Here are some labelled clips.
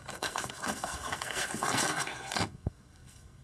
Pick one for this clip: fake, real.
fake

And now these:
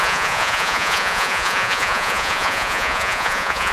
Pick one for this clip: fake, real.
fake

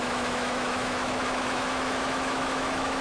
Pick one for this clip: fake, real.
fake